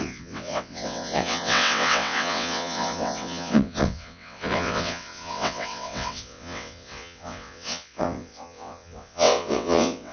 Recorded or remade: remade